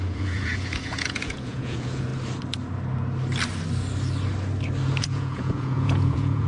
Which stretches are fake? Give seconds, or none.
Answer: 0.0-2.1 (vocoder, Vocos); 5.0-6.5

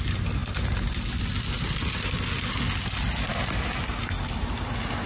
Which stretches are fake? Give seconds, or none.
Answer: none

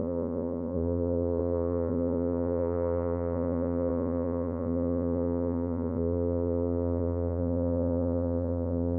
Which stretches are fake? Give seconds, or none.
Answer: 0.0-9.0 (vocoder, Vocos)

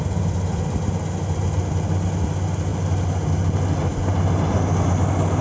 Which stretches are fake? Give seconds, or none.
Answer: none